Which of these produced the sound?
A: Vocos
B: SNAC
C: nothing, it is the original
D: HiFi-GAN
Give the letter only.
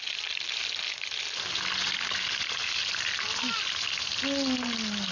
C